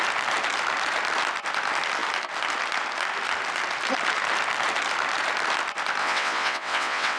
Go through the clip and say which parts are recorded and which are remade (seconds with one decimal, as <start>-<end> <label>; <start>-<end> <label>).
0.0-6.0 recorded; 6.0-7.2 remade